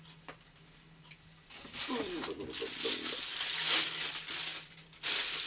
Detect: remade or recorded recorded